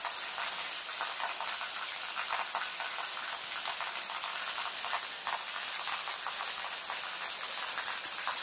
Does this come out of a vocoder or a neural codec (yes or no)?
no